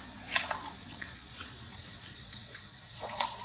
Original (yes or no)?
no